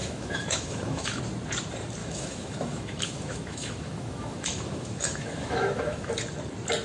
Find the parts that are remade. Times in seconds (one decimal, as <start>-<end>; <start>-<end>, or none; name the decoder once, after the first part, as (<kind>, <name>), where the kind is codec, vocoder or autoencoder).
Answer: 0.0-1.2 (autoencoder, DAC-VAE); 2.0-6.1